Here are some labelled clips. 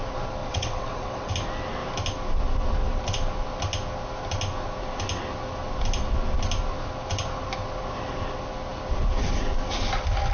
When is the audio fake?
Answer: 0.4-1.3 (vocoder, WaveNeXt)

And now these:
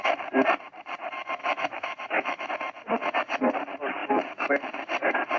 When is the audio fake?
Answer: 1.4-2.5 (autoencoder, DAC-VAE)

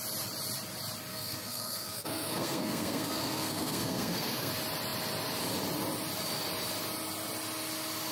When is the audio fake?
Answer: 1.1-4.5 (codec, SNAC)

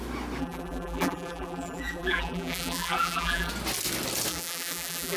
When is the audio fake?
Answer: 0.4-3.5 (vocoder, BigVGAN v2); 4.3-5.2

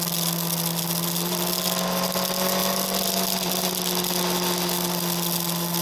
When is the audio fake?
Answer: none

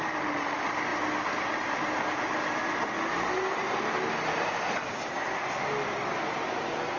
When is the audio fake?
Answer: none